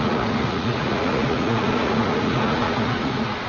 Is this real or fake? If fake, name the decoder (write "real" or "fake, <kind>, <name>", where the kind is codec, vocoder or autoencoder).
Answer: fake, vocoder, Vocos